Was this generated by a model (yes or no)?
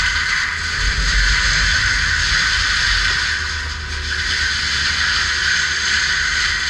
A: no